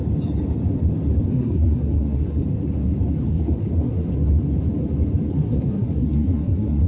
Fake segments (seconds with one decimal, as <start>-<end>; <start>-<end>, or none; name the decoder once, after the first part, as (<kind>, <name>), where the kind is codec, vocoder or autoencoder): 1.3-2.4 (codec, SNAC); 3.2-4.1; 5.3-6.9